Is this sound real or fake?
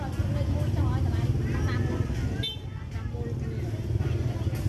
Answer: real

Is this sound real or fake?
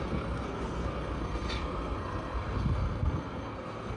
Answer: fake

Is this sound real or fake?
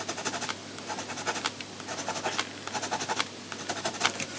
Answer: real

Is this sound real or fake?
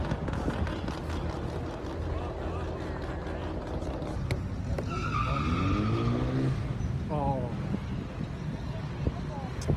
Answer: real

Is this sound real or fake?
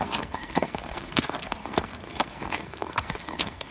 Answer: fake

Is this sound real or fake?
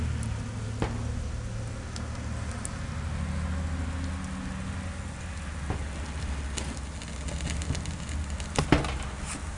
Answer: real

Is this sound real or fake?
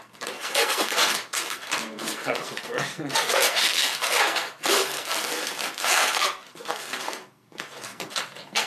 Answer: fake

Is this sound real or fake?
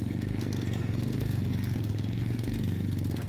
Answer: fake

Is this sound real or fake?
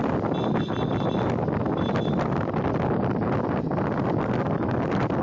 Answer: real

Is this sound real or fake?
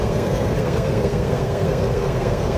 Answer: fake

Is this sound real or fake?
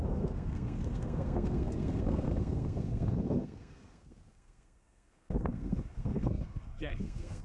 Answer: fake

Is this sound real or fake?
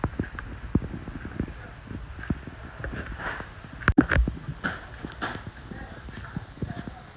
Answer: real